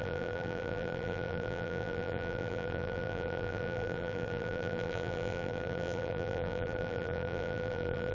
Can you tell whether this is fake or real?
fake